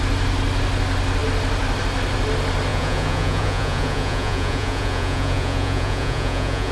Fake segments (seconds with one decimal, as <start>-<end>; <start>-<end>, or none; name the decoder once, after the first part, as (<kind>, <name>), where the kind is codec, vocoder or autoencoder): 2.7-6.7 (vocoder, Vocos)

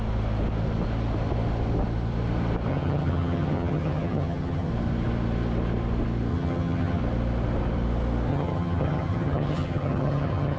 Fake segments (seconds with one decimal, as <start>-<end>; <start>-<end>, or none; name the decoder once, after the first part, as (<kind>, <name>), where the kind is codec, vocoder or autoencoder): 2.7-4.7 (vocoder, HiFi-GAN); 6.3-7.0; 8.3-10.6

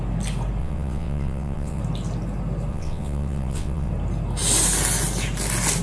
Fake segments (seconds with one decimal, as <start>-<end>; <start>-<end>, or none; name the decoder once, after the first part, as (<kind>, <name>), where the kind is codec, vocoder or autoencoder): 0.6-1.8 (vocoder, WaveNeXt); 2.7-3.9

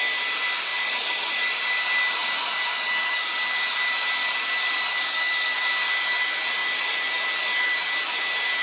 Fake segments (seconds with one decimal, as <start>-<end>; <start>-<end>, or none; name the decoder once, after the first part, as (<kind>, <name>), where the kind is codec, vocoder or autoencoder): none

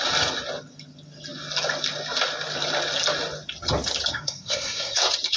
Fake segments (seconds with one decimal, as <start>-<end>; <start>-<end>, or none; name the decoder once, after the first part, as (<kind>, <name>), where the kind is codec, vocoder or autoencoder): 4.1-5.0 (codec, SNAC)